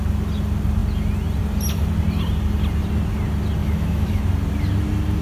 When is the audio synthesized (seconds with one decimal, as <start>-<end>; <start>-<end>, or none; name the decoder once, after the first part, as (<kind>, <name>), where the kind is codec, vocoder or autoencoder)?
3.6-4.2 (autoencoder, DAC-VAE)